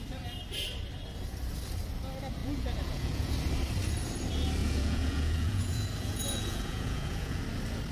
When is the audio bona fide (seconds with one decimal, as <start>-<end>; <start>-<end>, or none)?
0.0-2.4; 3.3-4.6; 7.4-7.9